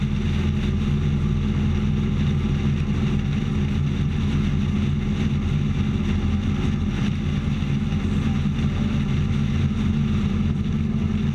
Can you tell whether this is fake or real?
real